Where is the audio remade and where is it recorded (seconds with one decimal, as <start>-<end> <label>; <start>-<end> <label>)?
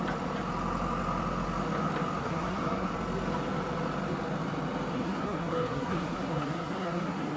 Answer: 0.0-2.2 recorded; 2.2-2.9 remade; 2.9-4.9 recorded; 4.9-7.4 remade